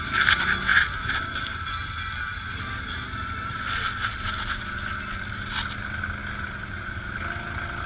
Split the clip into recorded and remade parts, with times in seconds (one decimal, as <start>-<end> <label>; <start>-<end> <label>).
0.0-7.9 recorded